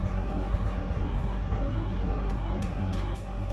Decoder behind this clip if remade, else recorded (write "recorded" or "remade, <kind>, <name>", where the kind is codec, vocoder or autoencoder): remade, codec, SNAC